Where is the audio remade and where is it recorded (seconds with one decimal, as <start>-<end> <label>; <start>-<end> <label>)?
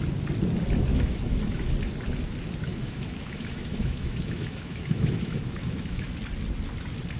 0.0-0.9 recorded; 0.9-1.7 remade; 1.7-2.7 recorded; 2.7-6.2 remade; 6.2-7.2 recorded